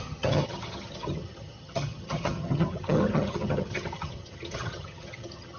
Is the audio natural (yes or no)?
no